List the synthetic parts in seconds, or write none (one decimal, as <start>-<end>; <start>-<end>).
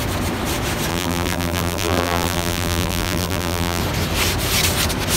0.9-3.8